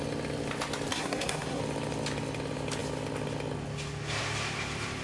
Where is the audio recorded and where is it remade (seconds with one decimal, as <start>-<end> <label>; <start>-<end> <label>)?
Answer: 0.0-0.9 recorded; 0.9-1.6 remade; 1.6-5.0 recorded